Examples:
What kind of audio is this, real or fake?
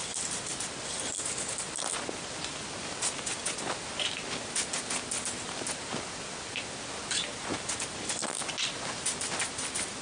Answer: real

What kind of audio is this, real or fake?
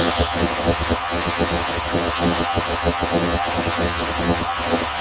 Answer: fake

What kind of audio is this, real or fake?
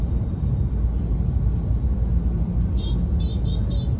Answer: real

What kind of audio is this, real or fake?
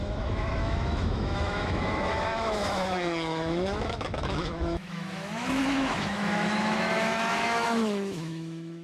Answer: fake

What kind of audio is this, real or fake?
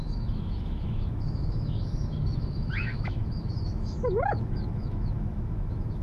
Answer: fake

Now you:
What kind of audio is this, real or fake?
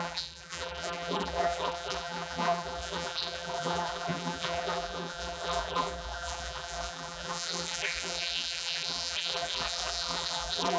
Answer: fake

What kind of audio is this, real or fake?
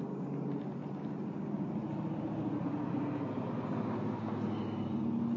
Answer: real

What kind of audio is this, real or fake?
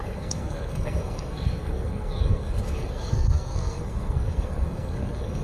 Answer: fake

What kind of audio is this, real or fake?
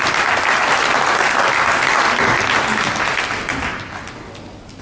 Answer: real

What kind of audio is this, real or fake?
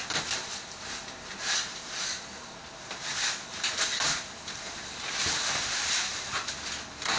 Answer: real